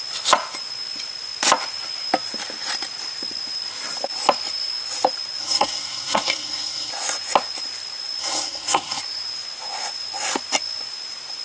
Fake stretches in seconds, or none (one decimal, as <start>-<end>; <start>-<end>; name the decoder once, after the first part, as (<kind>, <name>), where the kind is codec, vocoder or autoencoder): 5.4-6.9 (codec, SNAC); 8.2-9.0